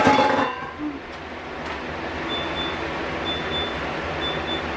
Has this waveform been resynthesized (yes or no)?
no